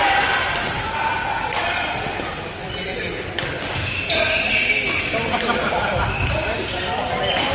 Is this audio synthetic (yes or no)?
no